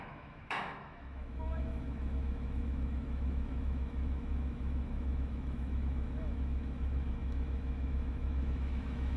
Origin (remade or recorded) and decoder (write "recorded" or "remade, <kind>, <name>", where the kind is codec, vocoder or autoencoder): remade, autoencoder, DAC-VAE